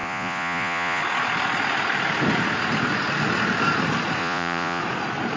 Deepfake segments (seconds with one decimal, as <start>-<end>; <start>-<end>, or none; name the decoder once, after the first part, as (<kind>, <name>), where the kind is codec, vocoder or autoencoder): 0.0-1.0 (vocoder, Vocos); 4.2-4.8